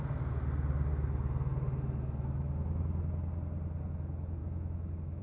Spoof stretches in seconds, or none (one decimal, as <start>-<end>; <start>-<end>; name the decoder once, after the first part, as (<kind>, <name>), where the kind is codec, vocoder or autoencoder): 4.4-5.2 (autoencoder, DAC-VAE)